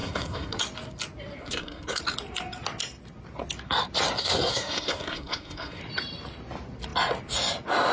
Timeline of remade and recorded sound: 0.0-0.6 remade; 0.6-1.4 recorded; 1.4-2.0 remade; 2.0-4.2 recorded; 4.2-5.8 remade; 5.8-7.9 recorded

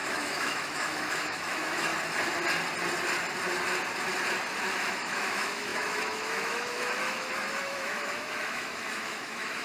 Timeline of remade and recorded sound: 0.0-1.9 remade; 1.9-4.8 recorded; 4.8-9.6 remade

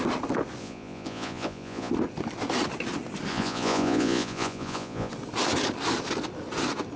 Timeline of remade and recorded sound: 0.0-0.6 recorded; 0.6-1.9 remade; 1.9-3.3 recorded; 3.3-5.1 remade; 5.1-7.0 recorded